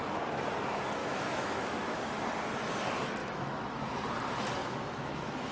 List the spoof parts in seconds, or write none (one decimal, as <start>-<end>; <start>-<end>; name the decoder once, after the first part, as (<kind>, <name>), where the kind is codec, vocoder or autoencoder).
1.0-2.2 (autoencoder, DAC-VAE); 3.2-3.8; 4.6-5.5